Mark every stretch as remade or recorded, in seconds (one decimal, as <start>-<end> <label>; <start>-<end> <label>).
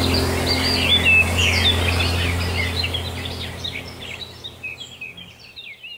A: 0.0-6.0 recorded